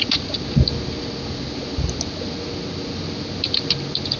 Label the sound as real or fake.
real